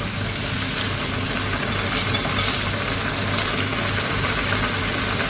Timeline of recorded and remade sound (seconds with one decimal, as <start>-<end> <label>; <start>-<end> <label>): 0.0-5.3 recorded